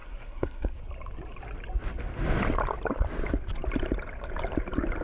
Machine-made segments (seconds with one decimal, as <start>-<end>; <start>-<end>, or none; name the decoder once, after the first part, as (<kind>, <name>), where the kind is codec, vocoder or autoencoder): 0.0-0.8 (codec, SNAC)